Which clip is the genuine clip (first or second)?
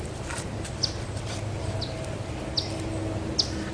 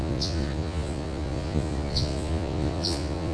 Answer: first